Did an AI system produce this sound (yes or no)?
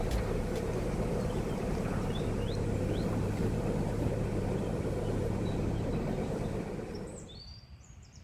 yes